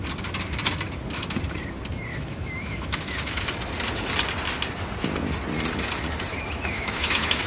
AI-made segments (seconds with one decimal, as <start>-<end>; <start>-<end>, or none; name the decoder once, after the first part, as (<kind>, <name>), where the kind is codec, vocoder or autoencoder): 2.1-3.4 (autoencoder, DAC-VAE); 6.3-7.5

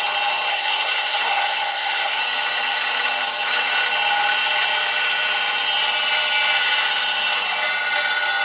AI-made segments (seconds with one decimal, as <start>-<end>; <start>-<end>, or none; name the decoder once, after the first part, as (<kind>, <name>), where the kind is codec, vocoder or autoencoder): 0.5-2.2 (codec, SNAC)

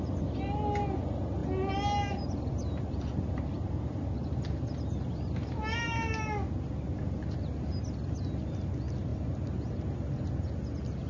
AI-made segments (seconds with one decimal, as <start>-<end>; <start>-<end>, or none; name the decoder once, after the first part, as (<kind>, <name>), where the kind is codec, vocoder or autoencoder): none

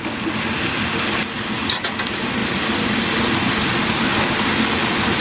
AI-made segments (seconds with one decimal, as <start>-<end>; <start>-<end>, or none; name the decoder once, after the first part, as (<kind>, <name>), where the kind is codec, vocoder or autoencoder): none

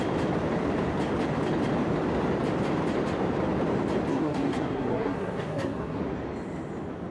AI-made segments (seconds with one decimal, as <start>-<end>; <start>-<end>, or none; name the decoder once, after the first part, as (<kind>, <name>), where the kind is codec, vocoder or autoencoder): 4.1-6.0 (codec, SNAC)

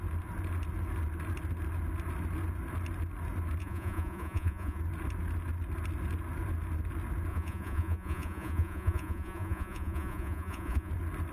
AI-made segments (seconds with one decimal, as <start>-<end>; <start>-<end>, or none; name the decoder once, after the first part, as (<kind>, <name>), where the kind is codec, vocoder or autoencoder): 3.6-4.8 (vocoder, Vocos); 7.3-10.9

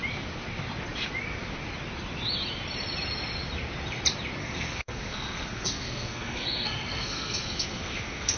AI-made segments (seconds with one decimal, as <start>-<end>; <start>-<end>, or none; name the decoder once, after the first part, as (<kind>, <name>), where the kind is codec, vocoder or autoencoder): 4.4-8.4 (codec, SNAC)